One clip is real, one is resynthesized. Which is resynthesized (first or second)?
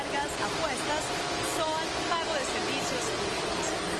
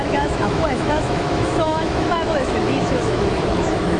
second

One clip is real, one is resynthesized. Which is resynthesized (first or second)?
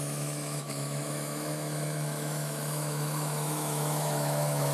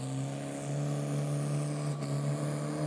first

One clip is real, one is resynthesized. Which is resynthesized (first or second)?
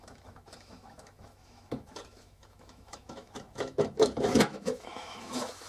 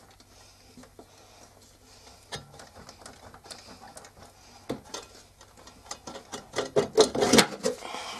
first